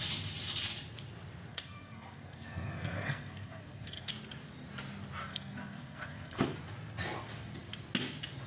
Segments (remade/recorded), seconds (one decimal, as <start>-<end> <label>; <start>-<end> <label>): 0.0-1.5 recorded; 1.5-4.1 remade; 4.1-5.3 recorded; 5.3-6.4 remade; 6.4-8.5 recorded